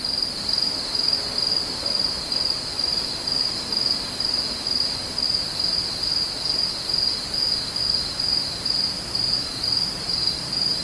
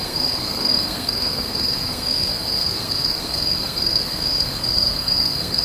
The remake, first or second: second